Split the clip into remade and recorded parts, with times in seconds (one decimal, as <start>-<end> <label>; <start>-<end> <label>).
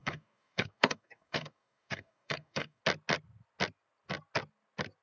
0.0-2.8 remade; 2.8-5.0 recorded